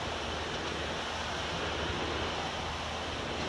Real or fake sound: real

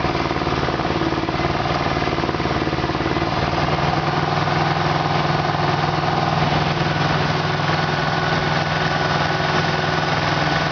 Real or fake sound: real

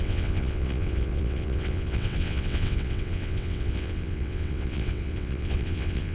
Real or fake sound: fake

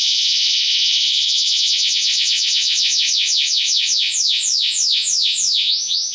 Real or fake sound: fake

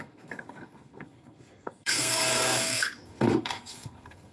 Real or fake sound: fake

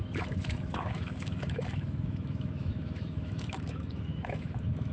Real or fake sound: fake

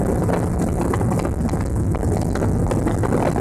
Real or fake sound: real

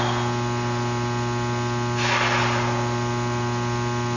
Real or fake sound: real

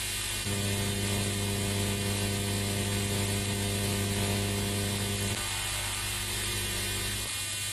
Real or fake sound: real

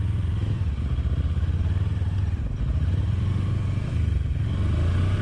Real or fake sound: real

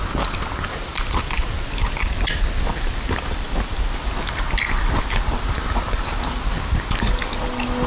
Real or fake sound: real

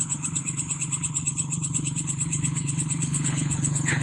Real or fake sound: fake